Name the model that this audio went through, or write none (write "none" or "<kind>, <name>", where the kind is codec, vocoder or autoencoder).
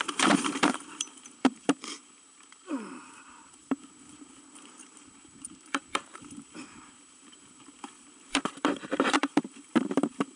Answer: vocoder, BigVGAN v2